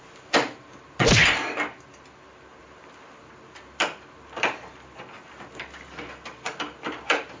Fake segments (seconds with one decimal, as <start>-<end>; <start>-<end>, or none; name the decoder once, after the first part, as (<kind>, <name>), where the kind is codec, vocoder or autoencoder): none